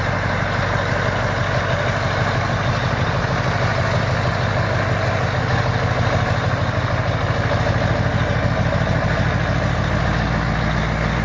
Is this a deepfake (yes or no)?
no